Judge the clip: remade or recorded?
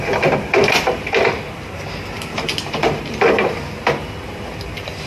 recorded